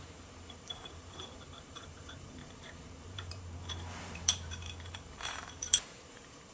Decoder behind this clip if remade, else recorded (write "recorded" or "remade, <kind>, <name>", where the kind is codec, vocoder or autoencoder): remade, vocoder, BigVGAN v2